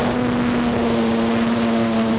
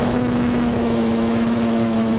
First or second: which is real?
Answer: first